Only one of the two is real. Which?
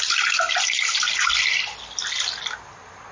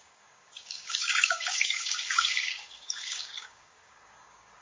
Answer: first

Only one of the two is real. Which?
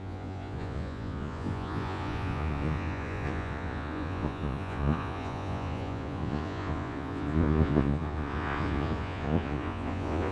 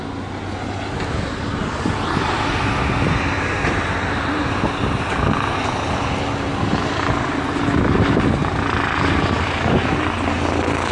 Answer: second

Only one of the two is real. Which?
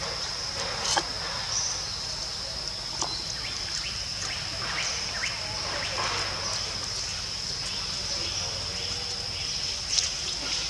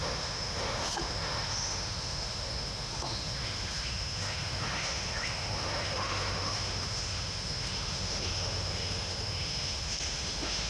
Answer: first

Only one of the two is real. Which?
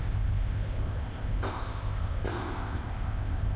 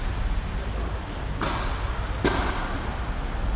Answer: second